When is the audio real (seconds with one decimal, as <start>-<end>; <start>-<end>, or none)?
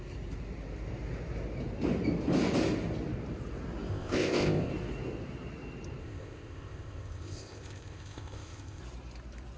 0.0-3.9; 4.7-6.0; 8.8-9.6